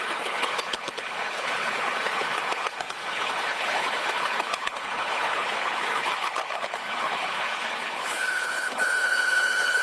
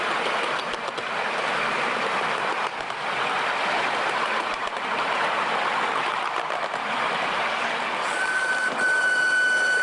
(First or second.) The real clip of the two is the second